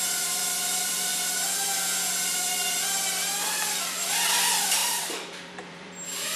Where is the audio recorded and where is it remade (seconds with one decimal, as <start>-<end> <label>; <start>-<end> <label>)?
0.0-1.1 remade; 1.1-3.8 recorded; 3.8-6.4 remade